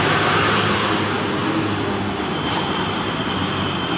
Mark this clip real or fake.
real